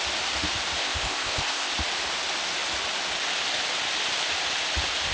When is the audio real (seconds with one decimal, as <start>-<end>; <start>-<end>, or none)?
0.0-0.8; 1.7-5.1